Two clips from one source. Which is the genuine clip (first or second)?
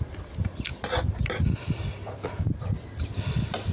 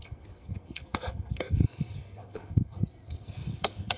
first